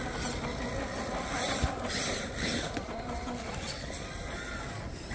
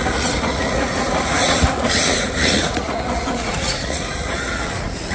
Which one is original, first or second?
first